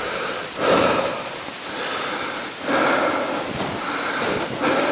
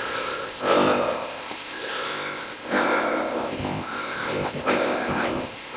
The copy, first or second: second